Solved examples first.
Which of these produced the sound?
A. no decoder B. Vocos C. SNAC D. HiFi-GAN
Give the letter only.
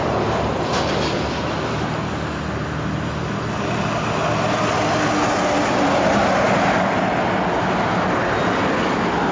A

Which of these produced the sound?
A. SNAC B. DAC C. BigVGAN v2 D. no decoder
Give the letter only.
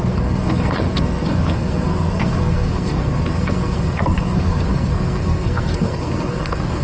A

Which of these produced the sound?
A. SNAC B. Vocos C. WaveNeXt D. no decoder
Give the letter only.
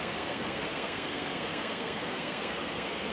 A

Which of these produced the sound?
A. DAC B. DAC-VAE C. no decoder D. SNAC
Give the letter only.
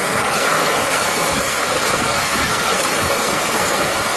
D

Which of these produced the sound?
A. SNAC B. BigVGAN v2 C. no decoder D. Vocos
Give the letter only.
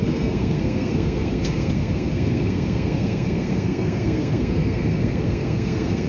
A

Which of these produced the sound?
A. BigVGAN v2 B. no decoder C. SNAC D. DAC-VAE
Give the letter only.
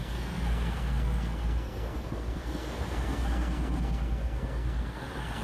C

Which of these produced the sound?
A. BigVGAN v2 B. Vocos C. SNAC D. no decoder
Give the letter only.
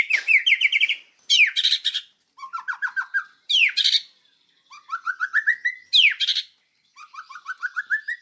D